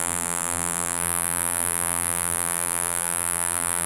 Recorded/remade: remade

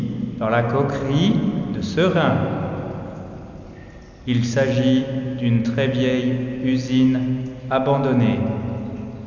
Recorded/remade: recorded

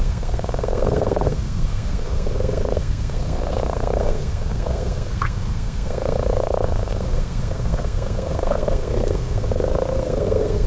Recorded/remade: remade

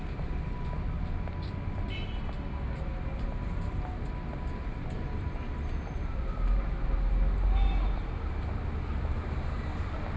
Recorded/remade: recorded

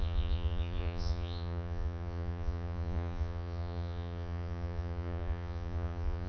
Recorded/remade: remade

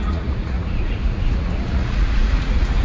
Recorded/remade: remade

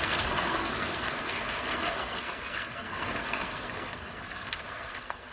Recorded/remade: remade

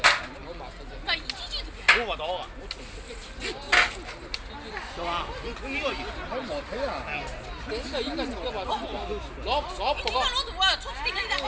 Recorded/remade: recorded